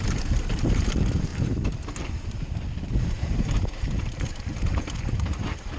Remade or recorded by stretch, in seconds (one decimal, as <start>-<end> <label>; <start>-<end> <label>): 0.0-1.3 remade; 1.3-3.0 recorded; 3.0-5.8 remade